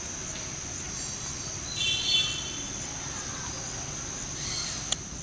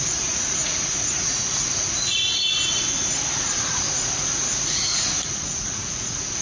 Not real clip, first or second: second